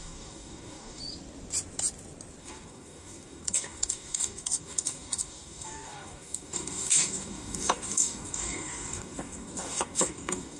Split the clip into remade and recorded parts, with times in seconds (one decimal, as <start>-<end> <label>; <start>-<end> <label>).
0.0-1.0 remade; 1.0-2.4 recorded; 2.4-10.6 remade